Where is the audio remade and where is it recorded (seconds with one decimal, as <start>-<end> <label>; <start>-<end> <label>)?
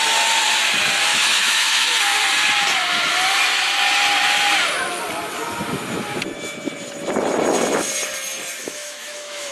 0.0-1.1 recorded; 1.1-2.0 remade; 2.0-8.6 recorded; 8.6-9.5 remade